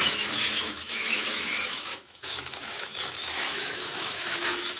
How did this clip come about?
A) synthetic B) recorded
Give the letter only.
A